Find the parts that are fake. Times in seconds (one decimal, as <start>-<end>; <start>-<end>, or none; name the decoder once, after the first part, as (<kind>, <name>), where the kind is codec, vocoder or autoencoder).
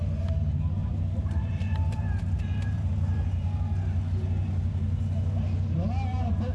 0.8-3.2 (vocoder, BigVGAN v2)